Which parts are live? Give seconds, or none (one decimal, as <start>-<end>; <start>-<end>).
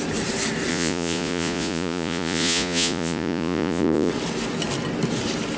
0.0-0.7; 4.1-5.6